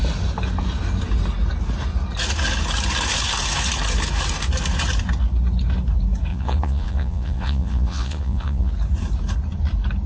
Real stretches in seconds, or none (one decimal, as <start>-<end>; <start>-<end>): 0.0-6.3; 8.7-10.1